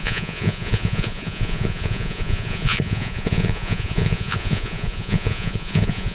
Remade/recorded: remade